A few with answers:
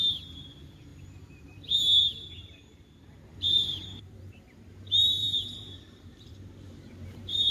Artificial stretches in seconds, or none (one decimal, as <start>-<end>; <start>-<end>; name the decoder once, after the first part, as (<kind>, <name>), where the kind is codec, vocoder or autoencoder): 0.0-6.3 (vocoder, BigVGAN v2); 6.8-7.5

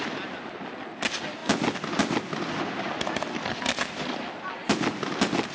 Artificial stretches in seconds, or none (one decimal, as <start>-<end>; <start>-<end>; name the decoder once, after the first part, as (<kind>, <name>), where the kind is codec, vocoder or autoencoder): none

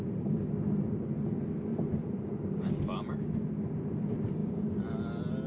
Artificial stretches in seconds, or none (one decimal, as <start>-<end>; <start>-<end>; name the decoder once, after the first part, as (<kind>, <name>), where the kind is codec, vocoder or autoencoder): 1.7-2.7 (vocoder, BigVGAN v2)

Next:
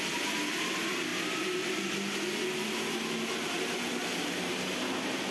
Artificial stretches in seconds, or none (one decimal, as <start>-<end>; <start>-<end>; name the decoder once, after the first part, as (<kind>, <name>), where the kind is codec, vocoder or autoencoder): none